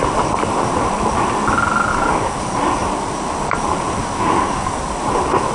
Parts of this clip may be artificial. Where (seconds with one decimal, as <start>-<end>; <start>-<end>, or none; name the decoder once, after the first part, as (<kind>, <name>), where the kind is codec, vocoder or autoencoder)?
1.9-2.4 (codec, DAC); 4.0-4.8